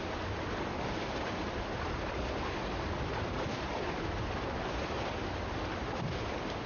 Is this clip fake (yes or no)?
no